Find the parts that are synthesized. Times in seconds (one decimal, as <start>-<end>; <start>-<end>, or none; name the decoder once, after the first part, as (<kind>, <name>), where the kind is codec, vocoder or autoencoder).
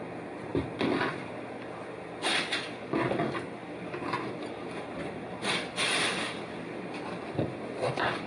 none